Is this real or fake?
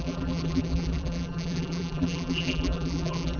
fake